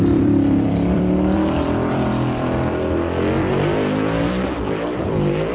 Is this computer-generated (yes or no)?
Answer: yes